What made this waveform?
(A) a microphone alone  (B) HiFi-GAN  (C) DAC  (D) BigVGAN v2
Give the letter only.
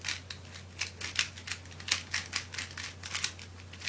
A